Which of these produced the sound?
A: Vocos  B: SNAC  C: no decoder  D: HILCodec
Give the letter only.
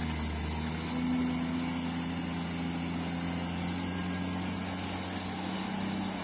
C